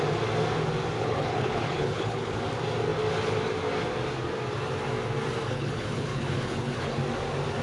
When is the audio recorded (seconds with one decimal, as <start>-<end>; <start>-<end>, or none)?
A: 0.0-1.0; 2.4-5.5; 7.0-7.6